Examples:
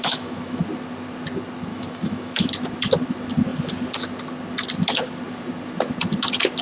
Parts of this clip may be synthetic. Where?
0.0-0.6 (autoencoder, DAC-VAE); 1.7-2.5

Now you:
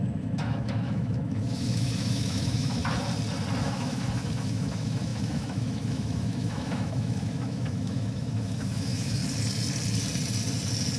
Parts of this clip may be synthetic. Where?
0.0-2.8 (autoencoder, DAC-VAE); 3.6-9.2

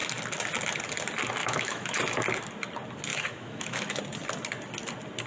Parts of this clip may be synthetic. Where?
1.4-2.0 (autoencoder, DAC-VAE); 3.1-4.0

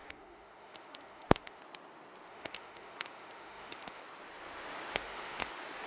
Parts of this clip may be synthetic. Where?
0.0-1.6 (autoencoder, DAC-VAE); 2.3-4.0; 4.9-5.5

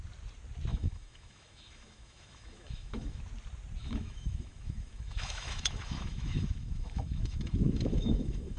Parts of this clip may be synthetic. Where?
0.7-3.2 (autoencoder, DAC-VAE); 3.8-8.6

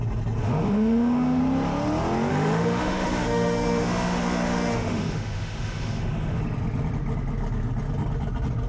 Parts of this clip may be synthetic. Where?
0.4-1.4 (autoencoder, DAC-VAE); 2.3-6.4

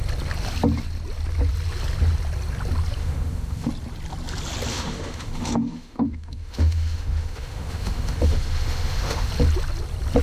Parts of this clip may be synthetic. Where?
3.0-3.7 (autoencoder, DAC-VAE); 4.7-9.3